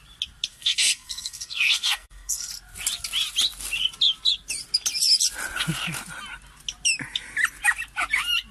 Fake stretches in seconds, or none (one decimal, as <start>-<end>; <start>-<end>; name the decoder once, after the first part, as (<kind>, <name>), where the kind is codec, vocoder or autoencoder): 0.5-2.5 (codec, SNAC)